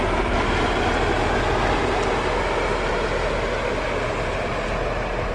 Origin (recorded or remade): recorded